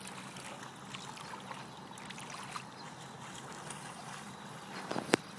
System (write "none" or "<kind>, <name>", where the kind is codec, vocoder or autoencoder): none